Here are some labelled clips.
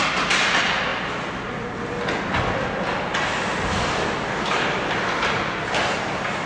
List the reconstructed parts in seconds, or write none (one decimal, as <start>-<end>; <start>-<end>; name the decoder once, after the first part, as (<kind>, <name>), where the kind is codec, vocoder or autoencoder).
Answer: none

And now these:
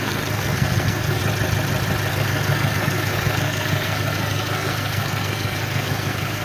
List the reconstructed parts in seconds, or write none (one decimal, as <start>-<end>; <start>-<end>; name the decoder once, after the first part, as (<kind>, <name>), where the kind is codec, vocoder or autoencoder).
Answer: 0.0-1.2 (codec, SNAC); 2.1-6.4

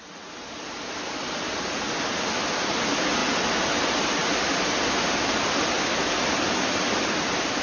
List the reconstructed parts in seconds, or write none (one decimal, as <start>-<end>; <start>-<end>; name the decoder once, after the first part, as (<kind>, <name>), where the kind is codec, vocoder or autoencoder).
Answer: none

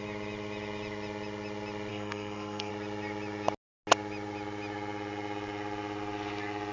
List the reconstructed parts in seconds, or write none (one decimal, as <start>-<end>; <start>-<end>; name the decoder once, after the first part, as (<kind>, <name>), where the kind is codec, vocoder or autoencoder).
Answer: 1.9-2.7 (codec, SNAC)

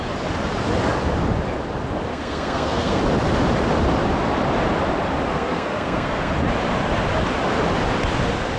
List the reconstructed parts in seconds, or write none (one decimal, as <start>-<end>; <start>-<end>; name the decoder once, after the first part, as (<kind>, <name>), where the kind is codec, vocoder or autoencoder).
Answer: 2.1-3.0 (codec, SNAC); 5.3-6.3

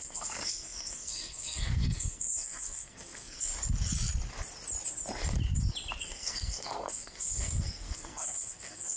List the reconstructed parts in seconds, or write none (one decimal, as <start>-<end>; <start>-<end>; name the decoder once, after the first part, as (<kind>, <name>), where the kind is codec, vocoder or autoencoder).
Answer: 0.0-3.5 (codec, SNAC); 6.0-9.0

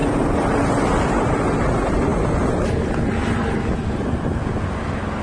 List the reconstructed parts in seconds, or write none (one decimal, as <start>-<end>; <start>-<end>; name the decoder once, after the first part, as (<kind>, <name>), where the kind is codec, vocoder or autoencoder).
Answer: none

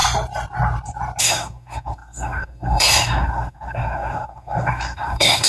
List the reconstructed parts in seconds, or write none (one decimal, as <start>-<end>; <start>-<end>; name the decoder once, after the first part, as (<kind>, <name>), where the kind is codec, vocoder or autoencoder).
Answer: 1.2-5.5 (codec, SNAC)